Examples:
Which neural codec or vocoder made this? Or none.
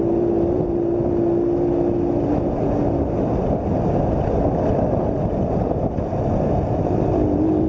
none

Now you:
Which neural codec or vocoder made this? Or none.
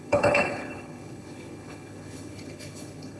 codec, HILCodec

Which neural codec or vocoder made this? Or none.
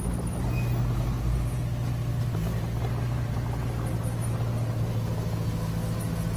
none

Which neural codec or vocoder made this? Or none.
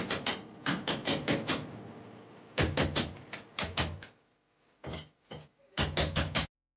none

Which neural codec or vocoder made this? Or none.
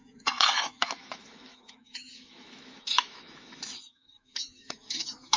autoencoder, DAC-VAE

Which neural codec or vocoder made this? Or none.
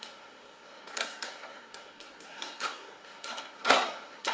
codec, SNAC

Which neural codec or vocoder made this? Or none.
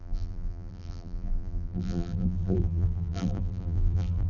vocoder, BigVGAN v2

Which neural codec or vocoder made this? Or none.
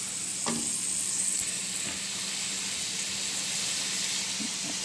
none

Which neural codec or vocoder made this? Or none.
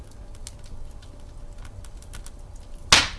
none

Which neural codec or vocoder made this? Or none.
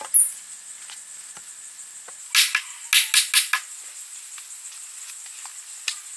none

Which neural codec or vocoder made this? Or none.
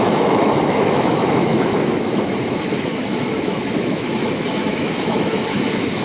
autoencoder, DAC-VAE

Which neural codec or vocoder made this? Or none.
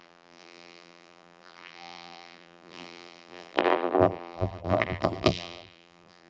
vocoder, BigVGAN v2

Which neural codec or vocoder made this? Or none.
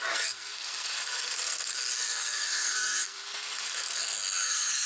codec, SNAC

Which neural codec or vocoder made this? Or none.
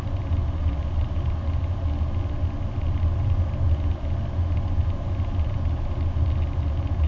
none